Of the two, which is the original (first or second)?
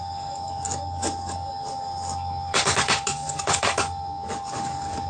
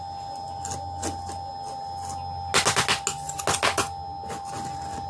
second